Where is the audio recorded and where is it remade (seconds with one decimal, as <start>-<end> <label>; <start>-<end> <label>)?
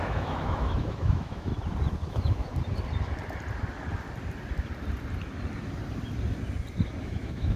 0.0-1.5 remade; 1.5-2.1 recorded; 2.1-2.5 remade; 2.5-7.0 recorded; 7.0-7.6 remade